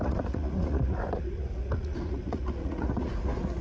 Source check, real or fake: fake